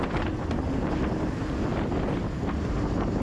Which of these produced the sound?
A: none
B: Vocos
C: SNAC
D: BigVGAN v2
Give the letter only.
A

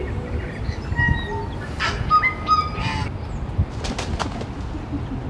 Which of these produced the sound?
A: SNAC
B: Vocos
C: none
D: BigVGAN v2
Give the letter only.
C